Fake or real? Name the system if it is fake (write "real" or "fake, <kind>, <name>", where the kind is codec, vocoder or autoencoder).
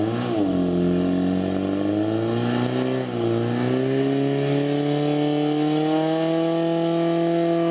real